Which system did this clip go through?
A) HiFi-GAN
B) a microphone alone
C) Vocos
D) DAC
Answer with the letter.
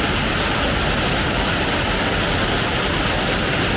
B